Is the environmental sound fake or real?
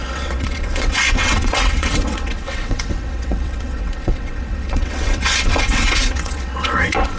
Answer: fake